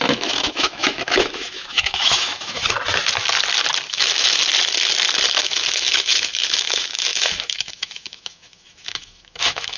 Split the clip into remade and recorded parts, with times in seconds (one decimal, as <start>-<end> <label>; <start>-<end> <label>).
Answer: 0.0-2.6 remade; 2.6-3.9 recorded; 3.9-4.4 remade; 4.4-5.4 recorded; 5.4-9.8 remade